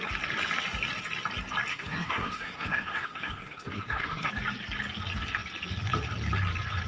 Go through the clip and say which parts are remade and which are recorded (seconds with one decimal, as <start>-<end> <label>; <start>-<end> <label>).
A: 0.0-1.7 recorded; 1.7-4.3 remade; 4.3-6.9 recorded